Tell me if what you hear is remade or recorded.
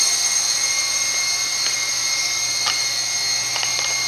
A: recorded